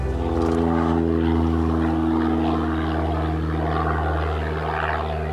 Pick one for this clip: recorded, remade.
recorded